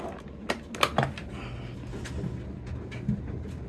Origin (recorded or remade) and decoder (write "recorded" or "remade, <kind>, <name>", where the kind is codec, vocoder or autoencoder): recorded